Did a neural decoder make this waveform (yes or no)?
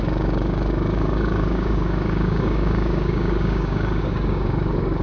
yes